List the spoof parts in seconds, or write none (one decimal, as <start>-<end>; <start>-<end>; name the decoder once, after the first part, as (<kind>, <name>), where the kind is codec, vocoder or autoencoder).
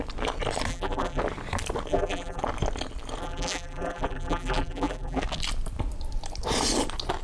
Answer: 0.7-1.2 (vocoder, BigVGAN v2); 1.9-2.4; 3.2-5.2